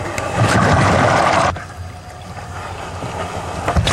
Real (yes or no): yes